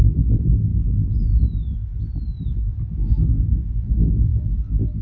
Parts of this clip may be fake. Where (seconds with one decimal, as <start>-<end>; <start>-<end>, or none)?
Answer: none